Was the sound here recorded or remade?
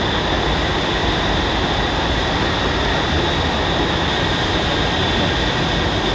recorded